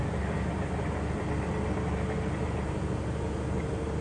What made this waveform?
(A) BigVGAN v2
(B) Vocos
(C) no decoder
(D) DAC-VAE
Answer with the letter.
C